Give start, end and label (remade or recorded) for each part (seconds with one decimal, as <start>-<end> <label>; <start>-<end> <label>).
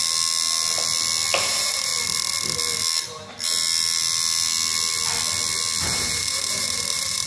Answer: 0.0-1.4 recorded; 1.4-1.9 remade; 1.9-5.8 recorded; 5.8-7.3 remade